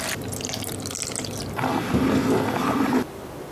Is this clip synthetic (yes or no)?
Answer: no